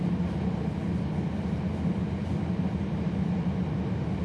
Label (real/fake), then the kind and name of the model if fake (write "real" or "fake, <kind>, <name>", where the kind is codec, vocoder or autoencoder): real